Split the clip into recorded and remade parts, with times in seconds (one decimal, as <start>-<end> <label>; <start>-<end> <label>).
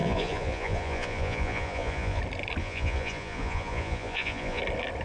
0.0-2.2 remade; 2.2-2.6 recorded; 2.6-4.6 remade; 4.6-5.0 recorded